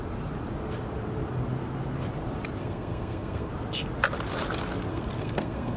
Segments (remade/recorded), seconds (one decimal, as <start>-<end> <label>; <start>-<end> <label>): 0.0-2.6 recorded; 2.6-3.5 remade; 3.5-4.9 recorded; 4.9-5.8 remade